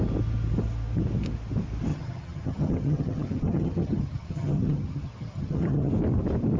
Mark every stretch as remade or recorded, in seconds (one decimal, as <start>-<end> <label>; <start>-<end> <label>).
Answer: 0.0-1.9 recorded; 1.9-5.9 remade; 5.9-6.6 recorded